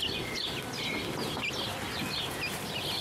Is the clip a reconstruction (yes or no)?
no